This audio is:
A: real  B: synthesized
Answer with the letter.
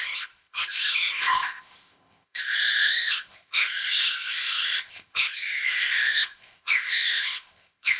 B